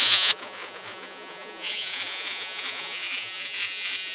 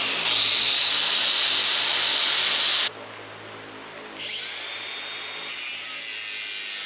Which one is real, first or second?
second